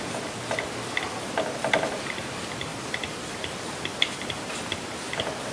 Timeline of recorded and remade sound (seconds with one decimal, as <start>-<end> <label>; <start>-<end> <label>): 0.0-2.7 recorded; 2.7-4.5 remade; 4.5-5.5 recorded